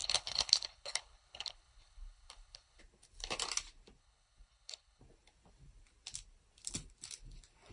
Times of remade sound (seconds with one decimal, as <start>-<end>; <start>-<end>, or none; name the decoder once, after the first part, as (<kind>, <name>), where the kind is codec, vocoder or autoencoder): 0.0-2.8 (codec, HILCodec); 4.0-5.0